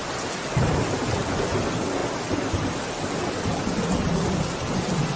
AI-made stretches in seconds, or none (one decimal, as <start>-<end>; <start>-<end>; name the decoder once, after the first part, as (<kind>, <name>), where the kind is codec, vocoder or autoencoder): none